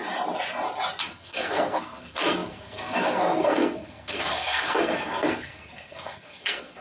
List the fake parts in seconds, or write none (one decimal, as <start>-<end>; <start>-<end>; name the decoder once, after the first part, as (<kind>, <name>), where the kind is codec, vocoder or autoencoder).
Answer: 1.0-6.8 (codec, SNAC)